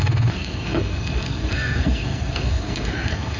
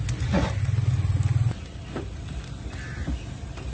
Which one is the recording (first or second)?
second